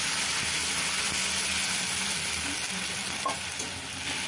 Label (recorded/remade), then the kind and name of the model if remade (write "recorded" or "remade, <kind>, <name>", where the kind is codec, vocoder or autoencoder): recorded